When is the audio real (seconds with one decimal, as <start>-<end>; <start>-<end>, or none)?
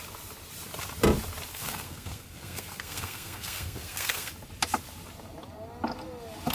0.0-1.5; 4.3-6.5